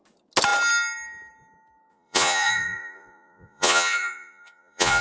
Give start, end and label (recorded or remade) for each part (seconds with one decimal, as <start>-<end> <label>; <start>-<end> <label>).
0.0-1.9 recorded; 1.9-5.0 remade